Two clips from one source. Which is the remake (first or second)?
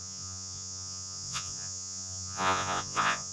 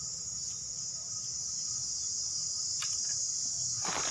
first